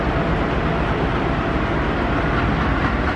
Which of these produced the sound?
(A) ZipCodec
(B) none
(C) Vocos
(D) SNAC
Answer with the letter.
B